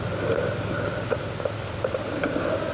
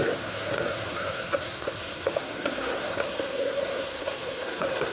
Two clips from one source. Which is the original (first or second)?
first